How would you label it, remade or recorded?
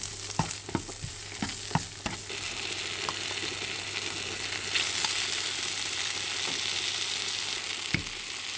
recorded